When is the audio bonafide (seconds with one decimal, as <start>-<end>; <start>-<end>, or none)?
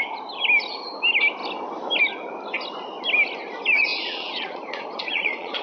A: 0.0-3.9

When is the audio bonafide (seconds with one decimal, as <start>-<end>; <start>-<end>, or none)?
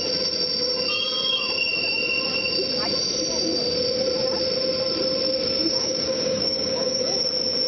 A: 0.0-5.6; 7.0-7.7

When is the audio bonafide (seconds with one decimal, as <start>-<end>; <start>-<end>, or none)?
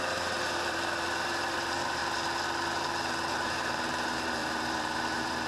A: 2.0-3.3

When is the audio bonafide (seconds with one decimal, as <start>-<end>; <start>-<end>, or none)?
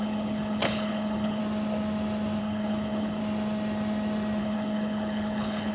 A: 1.4-2.4; 3.2-4.4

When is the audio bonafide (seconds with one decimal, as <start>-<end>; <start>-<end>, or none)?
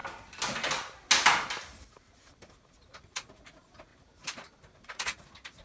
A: 0.0-2.9; 3.9-4.8